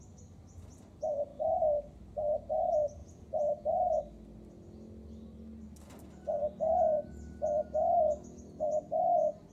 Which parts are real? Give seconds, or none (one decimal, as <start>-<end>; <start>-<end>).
0.0-3.0; 4.0-9.5